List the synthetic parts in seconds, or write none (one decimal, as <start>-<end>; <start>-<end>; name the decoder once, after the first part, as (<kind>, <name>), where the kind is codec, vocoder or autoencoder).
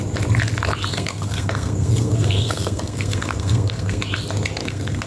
0.9-4.0 (codec, SNAC); 4.6-5.1